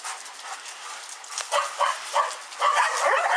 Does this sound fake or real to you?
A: real